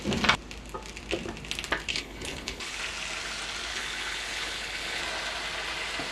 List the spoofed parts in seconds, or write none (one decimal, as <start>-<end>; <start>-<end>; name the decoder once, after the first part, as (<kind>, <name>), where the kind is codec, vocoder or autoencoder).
1.9-2.8 (codec, HILCodec); 3.7-5.0